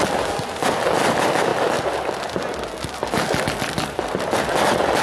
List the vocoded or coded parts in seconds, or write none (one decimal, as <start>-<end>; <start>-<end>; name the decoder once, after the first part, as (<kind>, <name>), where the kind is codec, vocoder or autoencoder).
none